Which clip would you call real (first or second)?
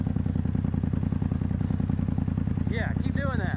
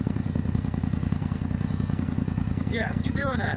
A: first